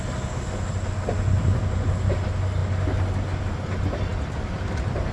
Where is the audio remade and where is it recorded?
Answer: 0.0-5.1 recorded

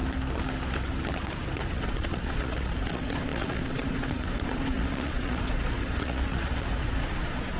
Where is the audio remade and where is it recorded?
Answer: 0.0-1.7 recorded; 1.7-7.6 remade

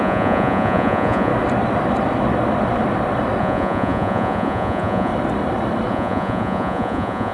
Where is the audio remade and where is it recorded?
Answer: 0.0-1.3 remade; 1.3-3.4 recorded; 3.4-5.1 remade; 5.1-5.9 recorded; 5.9-7.3 remade

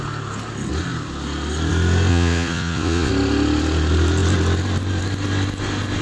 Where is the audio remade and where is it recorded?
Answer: 0.0-2.1 recorded; 2.1-3.1 remade; 3.1-6.0 recorded

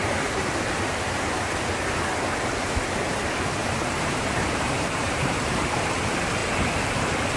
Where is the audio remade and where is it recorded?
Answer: 0.0-1.5 remade; 1.5-3.6 recorded; 3.6-6.0 remade; 6.0-7.4 recorded